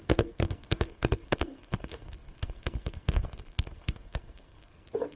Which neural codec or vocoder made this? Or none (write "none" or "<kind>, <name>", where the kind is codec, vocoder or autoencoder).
codec, SNAC